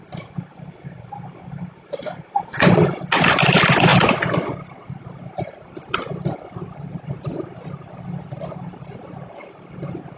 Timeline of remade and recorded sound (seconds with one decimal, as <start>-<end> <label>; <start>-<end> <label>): 0.0-10.2 recorded